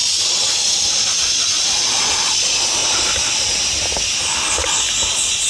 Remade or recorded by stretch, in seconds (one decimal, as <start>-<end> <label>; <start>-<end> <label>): 0.0-2.8 remade; 2.8-5.1 recorded; 5.1-5.5 remade